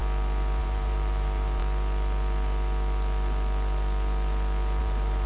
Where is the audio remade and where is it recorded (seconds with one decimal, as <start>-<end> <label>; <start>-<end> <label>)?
0.0-0.6 recorded; 0.6-1.6 remade; 1.6-4.8 recorded; 4.8-5.3 remade

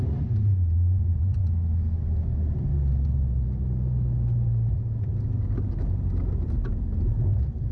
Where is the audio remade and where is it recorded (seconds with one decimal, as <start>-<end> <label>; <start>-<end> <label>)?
0.0-1.4 remade; 1.4-2.9 recorded; 2.9-5.1 remade; 5.1-5.8 recorded; 5.8-7.7 remade

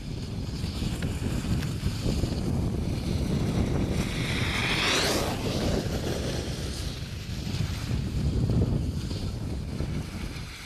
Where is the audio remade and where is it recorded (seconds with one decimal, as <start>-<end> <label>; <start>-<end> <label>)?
0.0-10.7 recorded

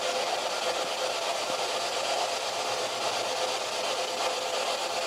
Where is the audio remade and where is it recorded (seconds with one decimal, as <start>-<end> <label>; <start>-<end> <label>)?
0.0-1.3 recorded; 1.3-3.1 remade; 3.1-5.1 recorded

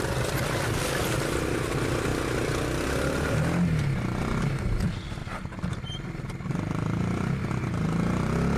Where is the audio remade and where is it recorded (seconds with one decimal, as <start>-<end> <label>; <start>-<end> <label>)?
0.0-8.6 recorded